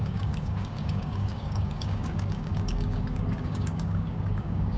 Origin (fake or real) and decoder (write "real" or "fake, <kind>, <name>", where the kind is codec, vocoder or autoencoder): fake, codec, DAC